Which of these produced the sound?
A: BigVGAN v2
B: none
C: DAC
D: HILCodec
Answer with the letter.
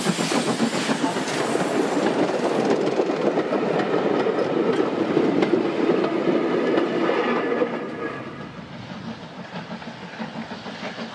B